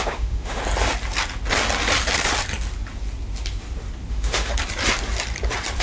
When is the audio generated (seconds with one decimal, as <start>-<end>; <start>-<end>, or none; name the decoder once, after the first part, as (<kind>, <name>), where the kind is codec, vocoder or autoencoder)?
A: 0.0-0.6 (autoencoder, DAC-VAE); 4.1-4.5

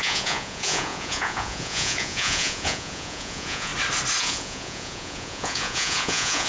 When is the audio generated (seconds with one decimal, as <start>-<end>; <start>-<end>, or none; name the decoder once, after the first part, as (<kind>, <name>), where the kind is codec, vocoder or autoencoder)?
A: 0.0-3.7 (vocoder, Vocos); 4.2-6.5

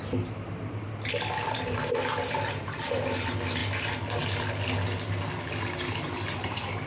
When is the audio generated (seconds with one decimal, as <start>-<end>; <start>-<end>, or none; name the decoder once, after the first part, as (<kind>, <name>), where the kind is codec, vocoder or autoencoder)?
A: none

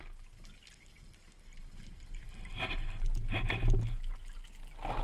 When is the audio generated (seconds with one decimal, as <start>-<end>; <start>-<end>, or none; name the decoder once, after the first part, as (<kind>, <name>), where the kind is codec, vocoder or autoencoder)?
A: none